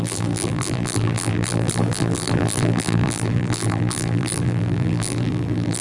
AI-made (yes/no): yes